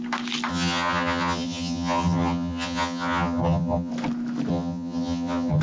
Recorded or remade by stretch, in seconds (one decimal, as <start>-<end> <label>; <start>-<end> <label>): 0.0-0.5 recorded; 0.5-3.9 remade; 3.9-4.5 recorded; 4.5-5.6 remade